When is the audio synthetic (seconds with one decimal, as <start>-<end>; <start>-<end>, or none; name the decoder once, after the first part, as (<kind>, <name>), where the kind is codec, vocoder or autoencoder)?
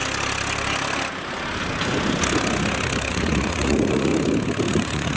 3.1-4.1 (vocoder, Vocos); 4.7-5.2